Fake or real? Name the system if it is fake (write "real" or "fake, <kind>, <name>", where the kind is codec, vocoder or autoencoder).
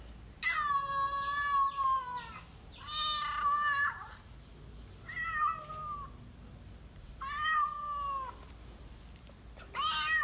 real